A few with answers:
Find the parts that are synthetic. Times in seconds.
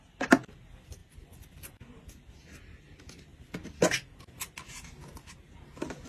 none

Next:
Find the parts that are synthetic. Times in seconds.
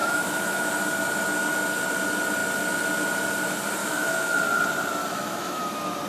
0.0-0.7 (autoencoder, DAC-VAE); 3.8-4.4; 5.0-5.6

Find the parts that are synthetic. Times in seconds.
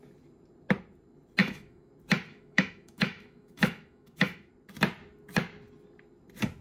1.4-1.9 (autoencoder, DAC-VAE); 2.3-4.5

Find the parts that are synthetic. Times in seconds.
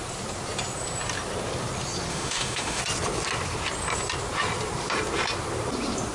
2.1-2.8 (autoencoder, DAC-VAE)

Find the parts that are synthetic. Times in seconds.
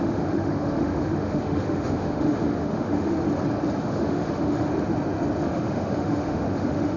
0.0-3.2 (autoencoder, DAC-VAE); 3.8-4.7; 5.4-7.0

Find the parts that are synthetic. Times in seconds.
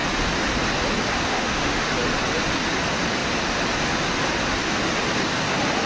1.3-1.9 (autoencoder, DAC-VAE)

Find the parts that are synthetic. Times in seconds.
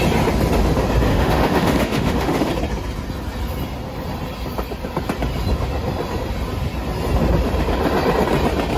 1.1-2.5 (autoencoder, DAC-VAE)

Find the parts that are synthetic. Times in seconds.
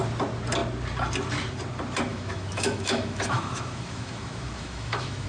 2.1-5.3 (autoencoder, DAC-VAE)